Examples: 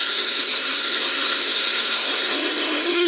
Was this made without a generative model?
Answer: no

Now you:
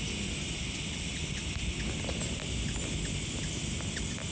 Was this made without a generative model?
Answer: yes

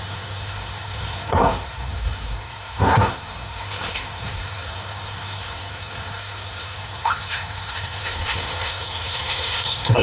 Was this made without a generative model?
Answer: no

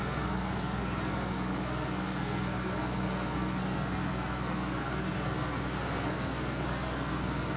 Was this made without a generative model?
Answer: no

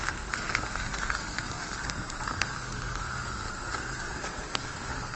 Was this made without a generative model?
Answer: no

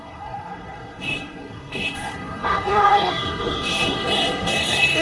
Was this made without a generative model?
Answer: no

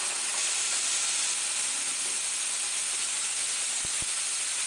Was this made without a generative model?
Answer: yes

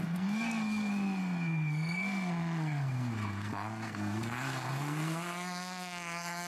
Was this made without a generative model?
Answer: no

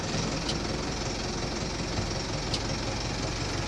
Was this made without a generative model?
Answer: yes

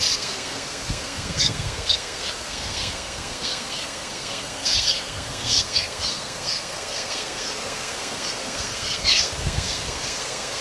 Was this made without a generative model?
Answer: no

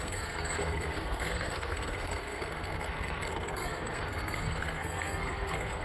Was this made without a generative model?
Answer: no